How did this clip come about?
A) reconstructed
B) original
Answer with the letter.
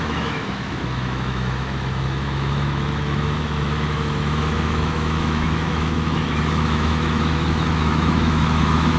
A